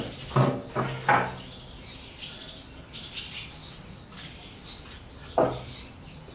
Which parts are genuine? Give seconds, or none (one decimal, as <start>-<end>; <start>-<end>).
0.0-6.3